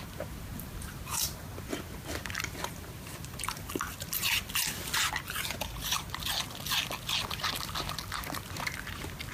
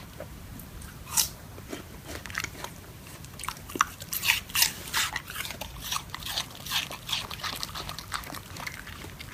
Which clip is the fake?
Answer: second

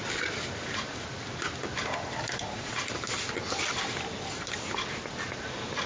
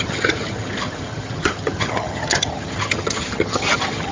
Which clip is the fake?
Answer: second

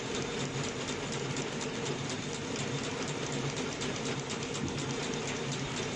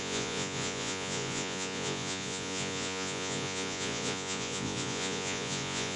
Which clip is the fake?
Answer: second